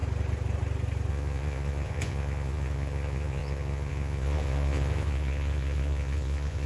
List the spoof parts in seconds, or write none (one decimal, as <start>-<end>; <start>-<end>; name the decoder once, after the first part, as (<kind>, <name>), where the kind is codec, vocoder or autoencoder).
1.1-6.7 (vocoder, Vocos)